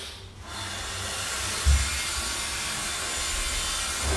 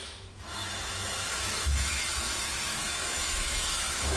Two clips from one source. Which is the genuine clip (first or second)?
first